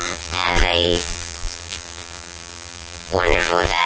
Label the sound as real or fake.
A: fake